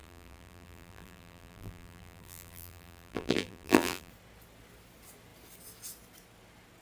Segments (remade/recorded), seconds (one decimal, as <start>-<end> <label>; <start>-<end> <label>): 0.0-4.1 remade; 4.1-6.8 recorded